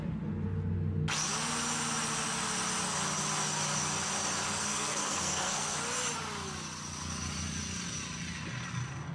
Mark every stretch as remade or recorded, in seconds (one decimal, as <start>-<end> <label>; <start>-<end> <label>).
0.0-4.6 recorded; 4.6-5.8 remade; 5.8-9.1 recorded